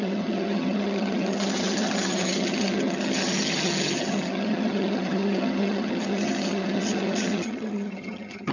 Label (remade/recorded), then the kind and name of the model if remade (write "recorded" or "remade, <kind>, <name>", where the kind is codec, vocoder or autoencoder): remade, vocoder, HiFi-GAN